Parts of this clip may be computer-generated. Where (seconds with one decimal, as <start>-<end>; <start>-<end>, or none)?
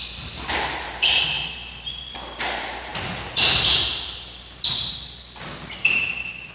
0.0-6.5